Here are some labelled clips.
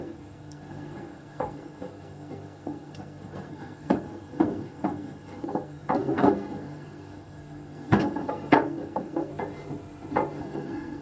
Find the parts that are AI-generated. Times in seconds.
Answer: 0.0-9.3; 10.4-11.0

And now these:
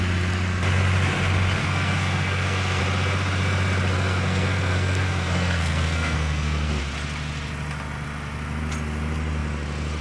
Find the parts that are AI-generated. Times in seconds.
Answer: 1.6-2.8; 3.9-6.8